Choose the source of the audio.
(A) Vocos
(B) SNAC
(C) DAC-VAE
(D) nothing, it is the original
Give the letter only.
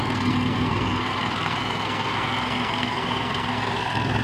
B